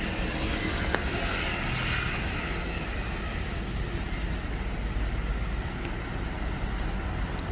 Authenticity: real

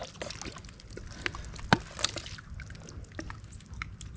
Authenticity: real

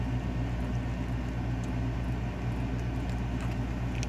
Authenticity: real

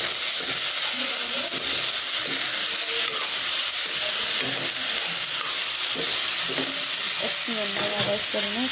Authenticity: real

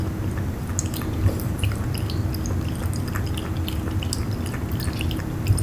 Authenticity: real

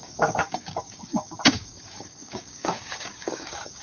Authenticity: fake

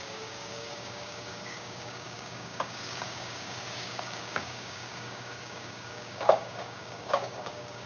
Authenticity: fake